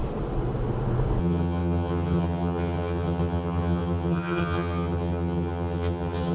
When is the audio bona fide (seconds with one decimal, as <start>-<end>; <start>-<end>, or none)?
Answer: 0.0-1.2